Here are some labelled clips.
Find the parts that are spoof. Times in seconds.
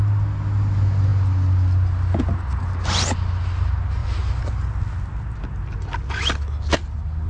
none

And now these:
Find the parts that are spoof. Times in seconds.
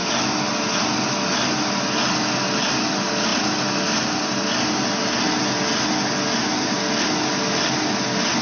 none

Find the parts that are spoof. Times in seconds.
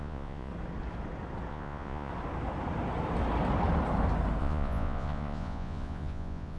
0.0-0.5 (vocoder, Vocos); 1.5-2.1; 4.4-6.6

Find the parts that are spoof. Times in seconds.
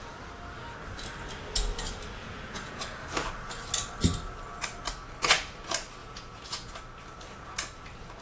2.2-3.0 (vocoder, Vocos); 6.0-6.7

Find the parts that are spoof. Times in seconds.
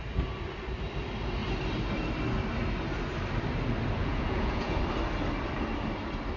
4.0-4.8 (vocoder, Vocos)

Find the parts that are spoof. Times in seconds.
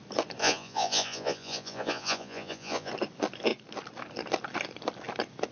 0.4-2.9 (vocoder, Vocos)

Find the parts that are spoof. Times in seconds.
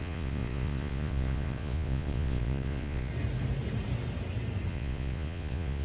0.0-3.1 (vocoder, Vocos); 4.7-5.8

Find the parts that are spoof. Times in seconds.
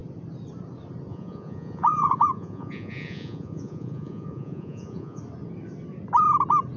1.1-5.2 (vocoder, Vocos)